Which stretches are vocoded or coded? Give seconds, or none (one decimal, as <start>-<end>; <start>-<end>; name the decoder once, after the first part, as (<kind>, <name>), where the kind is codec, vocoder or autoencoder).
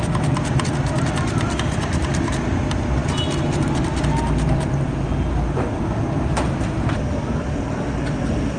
none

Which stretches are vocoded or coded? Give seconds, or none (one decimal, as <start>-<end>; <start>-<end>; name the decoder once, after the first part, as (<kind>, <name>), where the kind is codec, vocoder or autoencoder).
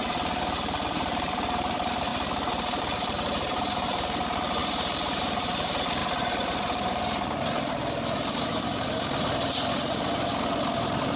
0.0-2.1 (vocoder, BigVGAN v2); 2.8-6.0; 6.5-11.2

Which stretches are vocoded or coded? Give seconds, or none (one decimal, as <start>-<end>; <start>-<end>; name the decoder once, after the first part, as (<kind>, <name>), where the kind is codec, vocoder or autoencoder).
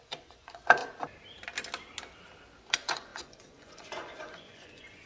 0.0-0.8 (vocoder, Vocos); 2.7-5.1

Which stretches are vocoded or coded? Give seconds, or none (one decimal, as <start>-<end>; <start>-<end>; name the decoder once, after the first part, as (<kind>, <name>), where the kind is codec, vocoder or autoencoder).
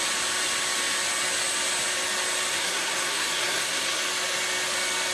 2.5-4.0 (codec, SNAC)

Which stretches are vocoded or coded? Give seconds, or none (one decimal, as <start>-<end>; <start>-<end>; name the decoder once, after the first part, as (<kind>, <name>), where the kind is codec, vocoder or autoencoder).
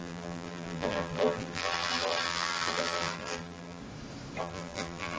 0.0-3.8 (vocoder, BigVGAN v2); 4.4-5.2